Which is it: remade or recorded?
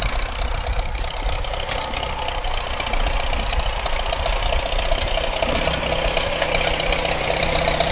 recorded